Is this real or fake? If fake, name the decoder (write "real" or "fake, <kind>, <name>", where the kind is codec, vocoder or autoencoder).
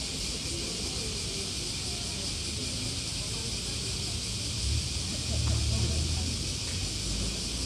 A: real